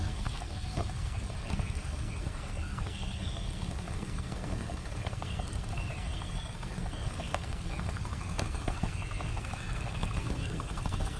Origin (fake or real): fake